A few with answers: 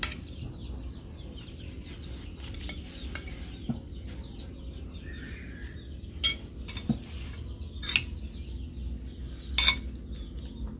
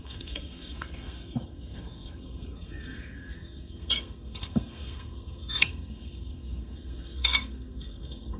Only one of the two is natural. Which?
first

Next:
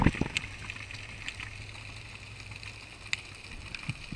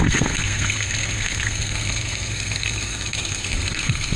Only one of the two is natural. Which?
first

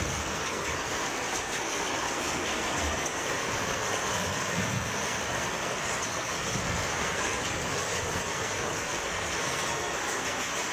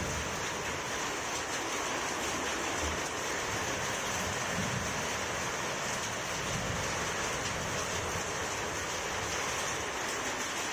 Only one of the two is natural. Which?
second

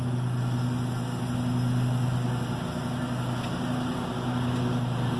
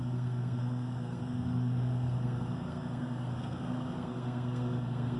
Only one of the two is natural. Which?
first